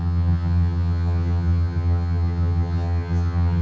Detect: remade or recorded remade